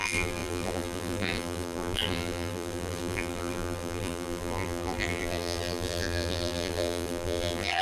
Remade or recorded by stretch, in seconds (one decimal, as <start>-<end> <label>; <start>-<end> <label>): 0.0-7.8 remade